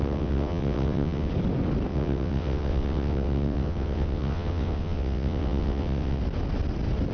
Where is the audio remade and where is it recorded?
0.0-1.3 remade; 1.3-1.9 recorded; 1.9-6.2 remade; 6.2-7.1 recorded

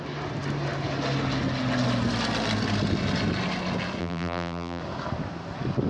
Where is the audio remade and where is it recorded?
0.0-4.0 recorded; 4.0-4.8 remade; 4.8-5.9 recorded